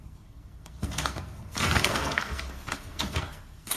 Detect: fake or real fake